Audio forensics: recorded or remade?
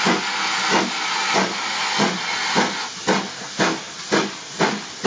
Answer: recorded